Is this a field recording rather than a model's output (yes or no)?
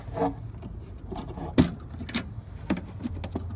yes